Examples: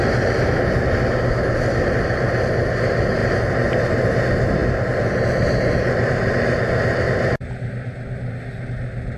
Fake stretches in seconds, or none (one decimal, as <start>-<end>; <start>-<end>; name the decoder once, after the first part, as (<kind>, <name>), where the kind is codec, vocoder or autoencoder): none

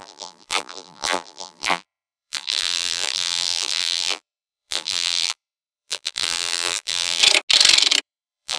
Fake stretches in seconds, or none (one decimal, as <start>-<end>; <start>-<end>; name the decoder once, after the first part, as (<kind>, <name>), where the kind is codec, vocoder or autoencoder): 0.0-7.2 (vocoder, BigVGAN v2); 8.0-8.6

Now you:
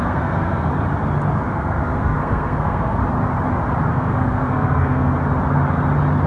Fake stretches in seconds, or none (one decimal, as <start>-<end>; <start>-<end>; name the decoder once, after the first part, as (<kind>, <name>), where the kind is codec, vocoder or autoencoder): 0.0-0.7 (codec, SNAC); 1.3-3.0; 3.9-5.1